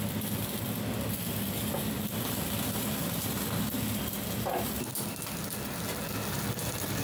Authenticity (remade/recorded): recorded